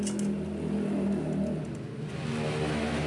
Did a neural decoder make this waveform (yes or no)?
no